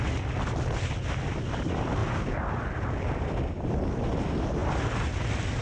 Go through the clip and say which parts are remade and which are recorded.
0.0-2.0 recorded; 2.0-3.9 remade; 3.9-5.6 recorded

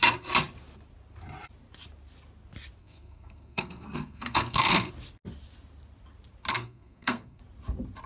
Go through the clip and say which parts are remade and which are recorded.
0.0-2.8 recorded; 2.8-4.9 remade; 4.9-6.5 recorded; 6.5-7.4 remade; 7.4-8.1 recorded

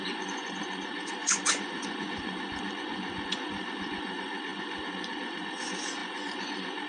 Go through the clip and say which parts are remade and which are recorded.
0.0-6.9 remade

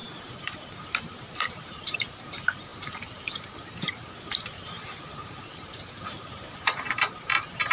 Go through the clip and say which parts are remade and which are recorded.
0.0-7.7 remade